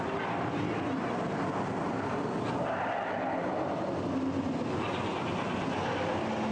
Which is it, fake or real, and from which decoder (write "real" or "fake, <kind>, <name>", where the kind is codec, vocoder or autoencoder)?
real